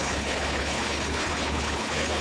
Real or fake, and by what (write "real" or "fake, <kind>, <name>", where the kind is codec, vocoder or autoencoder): fake, codec, HILCodec